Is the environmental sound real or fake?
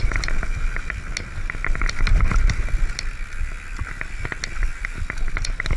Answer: real